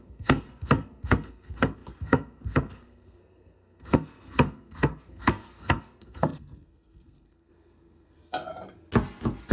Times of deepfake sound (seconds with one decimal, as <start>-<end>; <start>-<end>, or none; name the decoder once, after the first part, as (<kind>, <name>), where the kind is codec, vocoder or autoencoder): 0.0-8.5 (codec, SNAC)